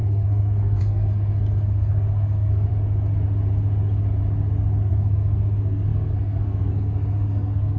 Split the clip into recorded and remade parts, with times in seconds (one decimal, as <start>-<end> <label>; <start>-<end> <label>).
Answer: 0.0-2.7 remade; 2.7-4.9 recorded; 4.9-7.8 remade